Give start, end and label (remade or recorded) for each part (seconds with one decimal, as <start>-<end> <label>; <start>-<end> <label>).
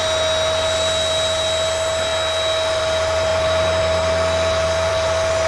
0.0-5.5 recorded